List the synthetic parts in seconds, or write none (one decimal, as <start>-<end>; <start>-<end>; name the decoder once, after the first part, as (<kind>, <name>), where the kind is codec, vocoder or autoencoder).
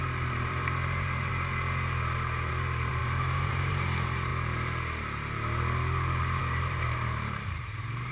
0.0-1.3 (vocoder, BigVGAN v2); 2.5-4.3; 6.4-8.1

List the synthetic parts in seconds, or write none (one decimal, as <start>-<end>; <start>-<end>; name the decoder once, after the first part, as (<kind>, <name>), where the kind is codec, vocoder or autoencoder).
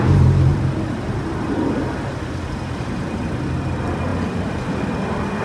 0.5-1.7 (vocoder, BigVGAN v2); 4.1-5.4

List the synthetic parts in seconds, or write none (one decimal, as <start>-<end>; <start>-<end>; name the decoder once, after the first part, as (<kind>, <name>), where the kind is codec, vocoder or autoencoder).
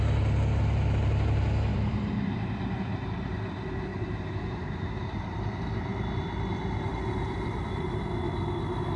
1.7-3.3 (vocoder, BigVGAN v2); 3.9-5.5; 6.9-8.0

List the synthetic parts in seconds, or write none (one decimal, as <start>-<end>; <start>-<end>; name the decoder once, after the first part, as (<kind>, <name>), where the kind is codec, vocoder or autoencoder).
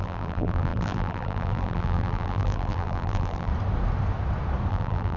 0.0-3.5 (vocoder, BigVGAN v2); 4.7-5.2